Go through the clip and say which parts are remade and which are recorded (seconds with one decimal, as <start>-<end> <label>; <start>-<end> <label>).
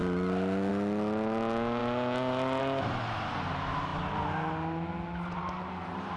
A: 0.0-6.2 recorded